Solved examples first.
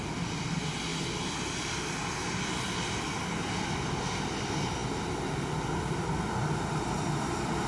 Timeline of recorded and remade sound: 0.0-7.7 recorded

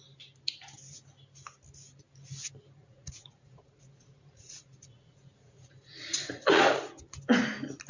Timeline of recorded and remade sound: 0.0-2.8 recorded; 2.8-6.9 remade; 6.9-7.9 recorded